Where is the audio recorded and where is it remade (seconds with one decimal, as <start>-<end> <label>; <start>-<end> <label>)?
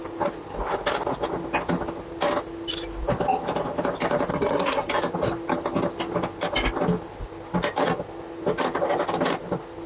0.0-4.3 recorded; 4.3-4.9 remade; 4.9-9.9 recorded